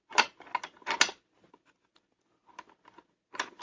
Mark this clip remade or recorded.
recorded